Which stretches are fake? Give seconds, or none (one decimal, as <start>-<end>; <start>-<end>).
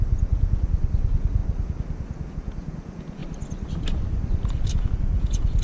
0.0-1.4; 2.3-3.2; 4.9-5.6